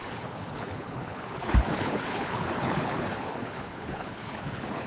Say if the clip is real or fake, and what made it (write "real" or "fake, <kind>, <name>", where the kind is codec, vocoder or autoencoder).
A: fake, codec, HILCodec